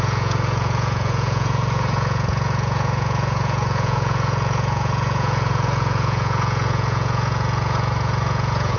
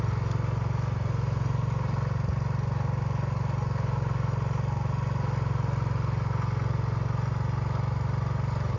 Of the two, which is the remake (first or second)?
first